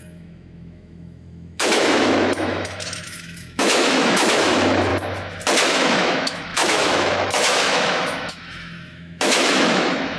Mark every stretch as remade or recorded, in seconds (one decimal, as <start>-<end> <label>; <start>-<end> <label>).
0.0-4.9 remade; 4.9-5.7 recorded; 5.7-10.2 remade